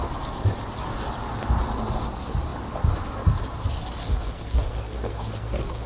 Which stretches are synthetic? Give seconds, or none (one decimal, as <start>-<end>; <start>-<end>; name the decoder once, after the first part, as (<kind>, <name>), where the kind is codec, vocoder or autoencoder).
4.0-5.9 (codec, SNAC)